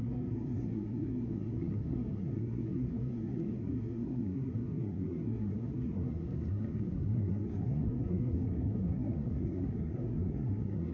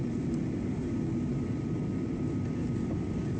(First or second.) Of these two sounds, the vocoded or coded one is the first